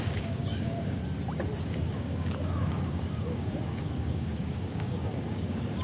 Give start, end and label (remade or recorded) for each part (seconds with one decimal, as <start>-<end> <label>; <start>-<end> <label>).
0.0-1.0 remade; 1.0-1.6 recorded; 1.6-5.8 remade